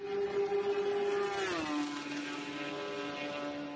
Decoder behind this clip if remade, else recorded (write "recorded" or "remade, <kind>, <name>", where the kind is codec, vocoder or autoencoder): recorded